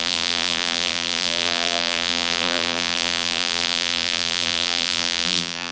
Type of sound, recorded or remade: remade